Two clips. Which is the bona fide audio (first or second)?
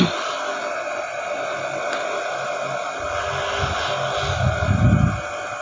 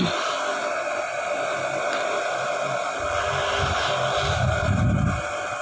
first